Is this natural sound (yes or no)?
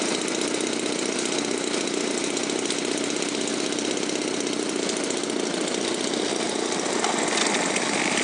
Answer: yes